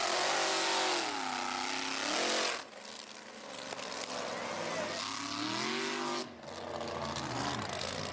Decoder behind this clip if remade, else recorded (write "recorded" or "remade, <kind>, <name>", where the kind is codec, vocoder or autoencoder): recorded